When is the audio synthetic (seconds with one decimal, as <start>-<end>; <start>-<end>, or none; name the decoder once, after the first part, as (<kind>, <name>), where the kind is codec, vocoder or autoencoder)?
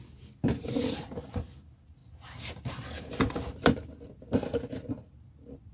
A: none